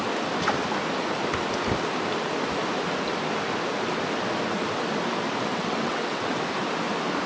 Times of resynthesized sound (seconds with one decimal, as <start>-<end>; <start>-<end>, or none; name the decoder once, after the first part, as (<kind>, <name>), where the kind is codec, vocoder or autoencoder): 5.5-6.4 (vocoder, WaveNeXt)